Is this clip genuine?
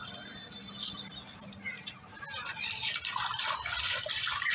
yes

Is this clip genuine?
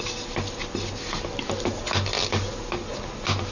yes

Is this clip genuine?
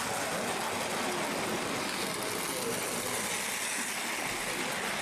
yes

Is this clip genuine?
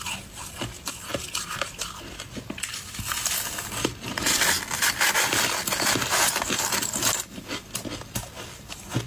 yes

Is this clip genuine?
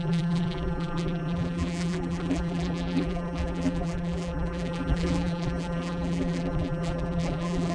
no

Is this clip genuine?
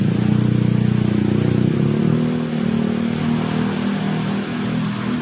yes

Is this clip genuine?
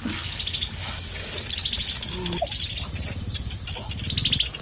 yes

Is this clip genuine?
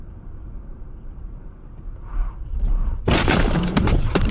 no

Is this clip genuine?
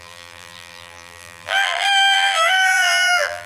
no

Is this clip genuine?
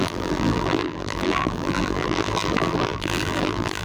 no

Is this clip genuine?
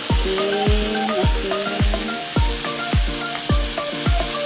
yes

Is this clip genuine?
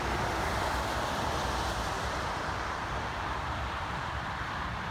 no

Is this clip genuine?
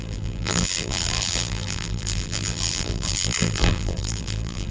no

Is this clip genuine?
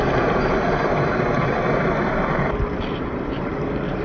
yes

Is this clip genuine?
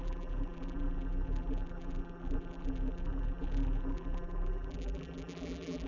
no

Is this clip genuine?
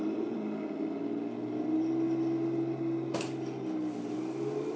yes